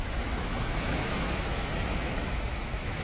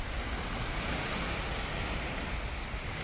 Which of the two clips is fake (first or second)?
first